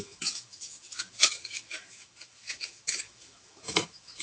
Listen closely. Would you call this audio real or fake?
fake